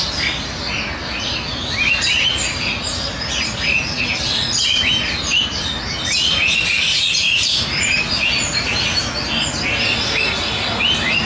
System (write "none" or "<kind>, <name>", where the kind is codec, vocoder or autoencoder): none